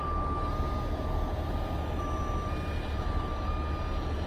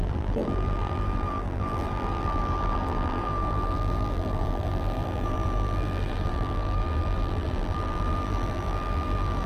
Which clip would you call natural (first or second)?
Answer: first